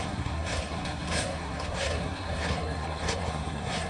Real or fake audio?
fake